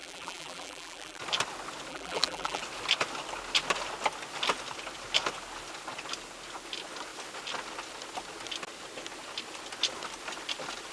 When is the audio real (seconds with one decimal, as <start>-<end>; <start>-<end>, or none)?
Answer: 1.2-1.9; 2.6-10.9

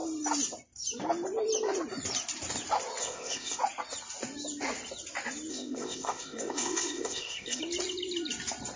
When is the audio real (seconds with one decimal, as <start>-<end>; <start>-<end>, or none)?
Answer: 0.0-3.0; 3.6-5.5; 7.6-8.8